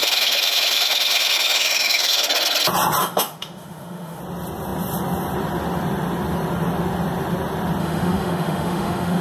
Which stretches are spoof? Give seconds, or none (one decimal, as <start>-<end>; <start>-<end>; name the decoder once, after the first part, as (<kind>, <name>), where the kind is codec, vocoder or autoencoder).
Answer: 0.0-2.3 (autoencoder, DAC-VAE); 3.0-4.2; 7.8-9.2